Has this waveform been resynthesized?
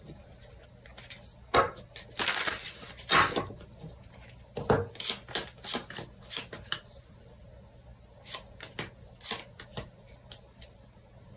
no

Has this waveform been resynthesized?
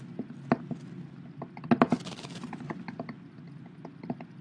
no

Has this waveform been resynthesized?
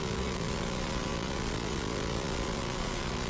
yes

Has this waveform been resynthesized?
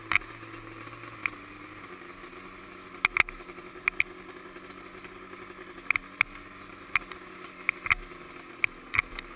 no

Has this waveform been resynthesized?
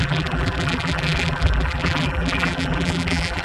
yes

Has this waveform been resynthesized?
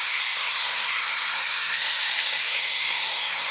yes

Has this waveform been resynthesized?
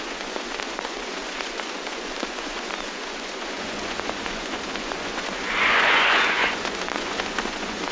yes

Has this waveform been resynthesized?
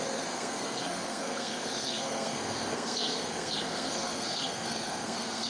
yes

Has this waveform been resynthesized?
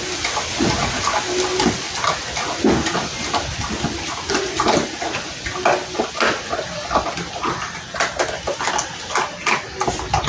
no